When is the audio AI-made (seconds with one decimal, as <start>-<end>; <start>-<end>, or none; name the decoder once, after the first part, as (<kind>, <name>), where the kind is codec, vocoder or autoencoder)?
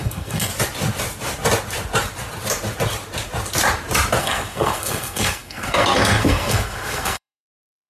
0.0-0.5 (codec, SNAC); 4.2-7.9